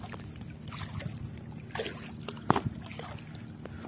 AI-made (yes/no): no